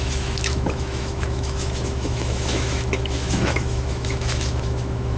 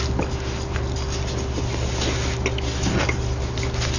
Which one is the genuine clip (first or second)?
second